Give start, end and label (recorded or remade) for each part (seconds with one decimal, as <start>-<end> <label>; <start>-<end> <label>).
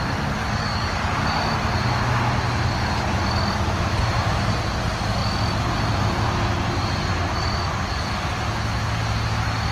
0.0-0.4 recorded; 0.4-1.1 remade; 1.1-9.7 recorded